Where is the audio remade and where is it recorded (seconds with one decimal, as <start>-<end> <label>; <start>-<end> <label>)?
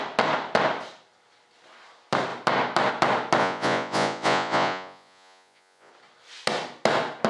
0.0-3.4 recorded; 3.4-5.9 remade; 5.9-7.3 recorded